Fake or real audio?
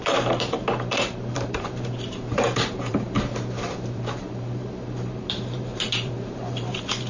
fake